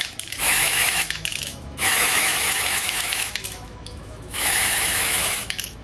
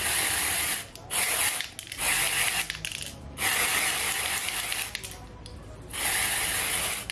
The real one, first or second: second